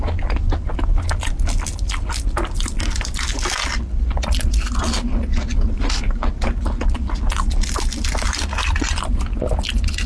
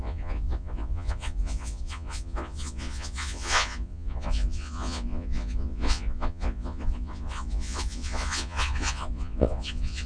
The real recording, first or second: first